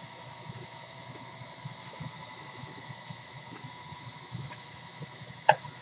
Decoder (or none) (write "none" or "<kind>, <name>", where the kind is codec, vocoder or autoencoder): autoencoder, DAC-VAE